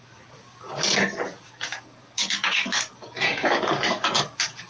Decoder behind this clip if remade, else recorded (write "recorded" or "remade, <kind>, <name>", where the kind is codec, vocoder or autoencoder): remade, codec, DAC